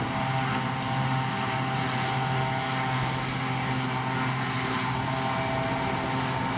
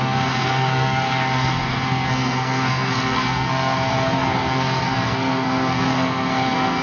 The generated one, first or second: second